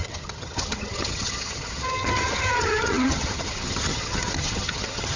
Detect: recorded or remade remade